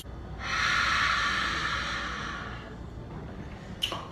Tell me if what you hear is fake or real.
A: real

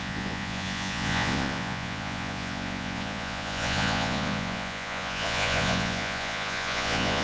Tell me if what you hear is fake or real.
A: fake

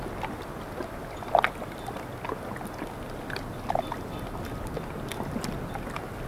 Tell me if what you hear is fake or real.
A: real